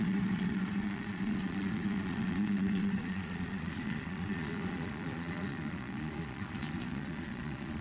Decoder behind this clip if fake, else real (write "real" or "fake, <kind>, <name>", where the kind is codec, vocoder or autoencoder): fake, vocoder, Vocos